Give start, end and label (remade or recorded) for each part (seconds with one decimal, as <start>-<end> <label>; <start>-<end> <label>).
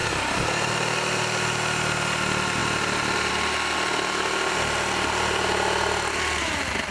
0.0-0.7 remade; 0.7-2.6 recorded; 2.6-3.3 remade; 3.3-6.9 recorded